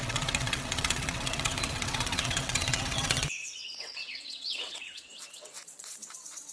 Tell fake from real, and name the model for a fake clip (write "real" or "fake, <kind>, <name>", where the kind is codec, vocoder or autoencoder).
fake, vocoder, WaveNeXt